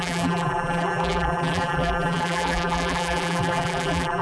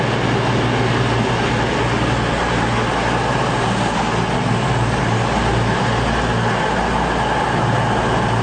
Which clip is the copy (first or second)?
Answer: first